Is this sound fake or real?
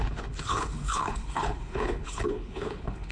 fake